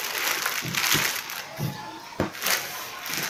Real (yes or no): yes